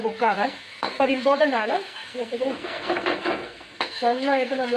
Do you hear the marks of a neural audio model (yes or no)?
yes